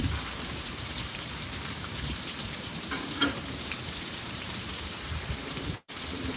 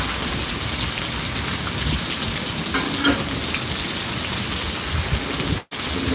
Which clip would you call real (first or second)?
second